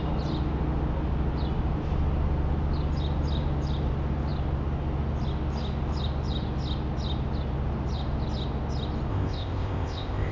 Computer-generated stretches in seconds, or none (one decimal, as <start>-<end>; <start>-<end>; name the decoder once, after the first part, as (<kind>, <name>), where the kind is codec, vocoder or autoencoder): 9.1-10.3 (codec, ZipCodec)